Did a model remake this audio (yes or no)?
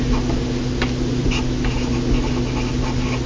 no